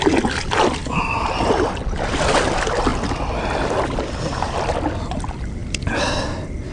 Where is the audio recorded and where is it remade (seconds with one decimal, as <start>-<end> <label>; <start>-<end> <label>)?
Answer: 0.0-6.7 recorded